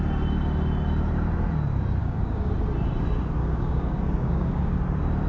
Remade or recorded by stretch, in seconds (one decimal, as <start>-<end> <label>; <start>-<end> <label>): 0.0-2.0 recorded; 2.0-2.5 remade; 2.5-3.4 recorded; 3.4-4.8 remade; 4.8-5.3 recorded